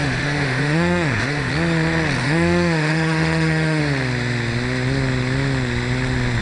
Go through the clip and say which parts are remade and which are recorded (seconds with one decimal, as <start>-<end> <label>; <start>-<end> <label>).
0.0-1.5 remade; 1.5-2.2 recorded; 2.2-3.8 remade; 3.8-6.4 recorded